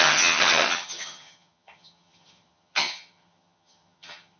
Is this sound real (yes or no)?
no